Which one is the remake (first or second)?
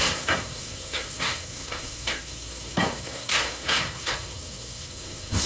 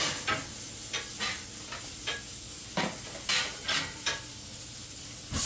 first